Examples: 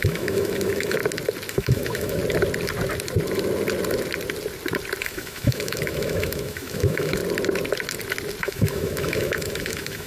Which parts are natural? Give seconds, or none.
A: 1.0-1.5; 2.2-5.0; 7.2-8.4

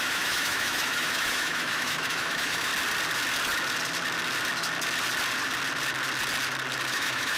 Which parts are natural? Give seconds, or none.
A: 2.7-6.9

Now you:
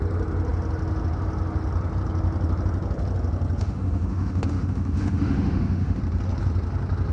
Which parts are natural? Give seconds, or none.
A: 0.0-3.6; 6.0-7.1

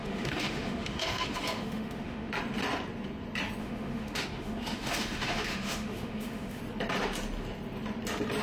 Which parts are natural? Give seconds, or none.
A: 2.3-3.6; 6.6-8.4

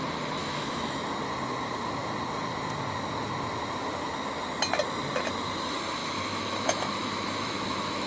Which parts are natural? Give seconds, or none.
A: 0.0-0.4; 1.0-6.0